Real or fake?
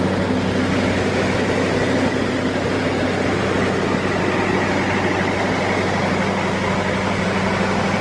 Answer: real